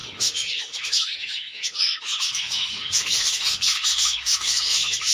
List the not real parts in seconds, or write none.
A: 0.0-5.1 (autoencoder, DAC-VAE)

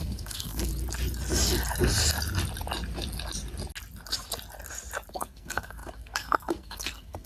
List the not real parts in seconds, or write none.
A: 0.0-0.7 (codec, SNAC); 5.1-7.3

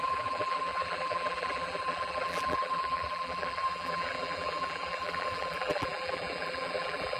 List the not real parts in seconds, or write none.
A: 0.0-7.2 (vocoder, BigVGAN v2)

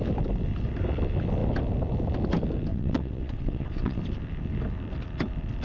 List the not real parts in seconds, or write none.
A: 2.7-4.0 (vocoder, WaveNeXt)

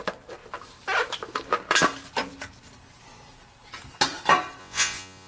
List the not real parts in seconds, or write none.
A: 4.6-5.3 (vocoder, Vocos)

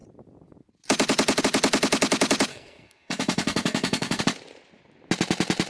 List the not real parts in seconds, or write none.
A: 2.5-4.2 (codec, SNAC)

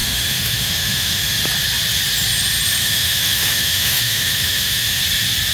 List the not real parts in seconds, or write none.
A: 0.0-1.4 (autoencoder, DAC-VAE); 2.8-5.0